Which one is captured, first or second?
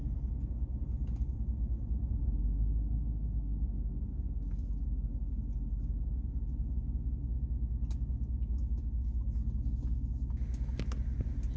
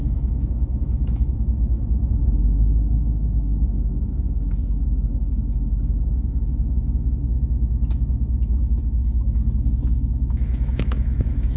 first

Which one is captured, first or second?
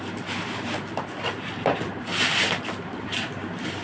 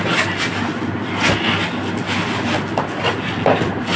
second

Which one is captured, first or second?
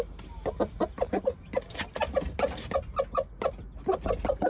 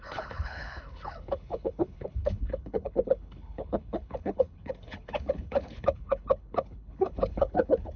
first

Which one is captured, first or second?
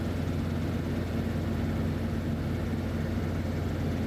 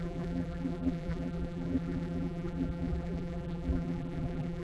first